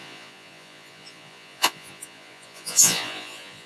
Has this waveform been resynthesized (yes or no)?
yes